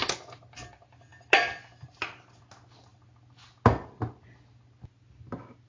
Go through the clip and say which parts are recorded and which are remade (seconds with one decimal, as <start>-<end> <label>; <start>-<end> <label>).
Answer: 0.0-5.7 recorded